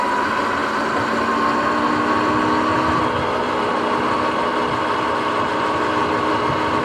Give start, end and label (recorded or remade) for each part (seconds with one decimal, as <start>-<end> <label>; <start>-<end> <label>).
0.0-6.8 recorded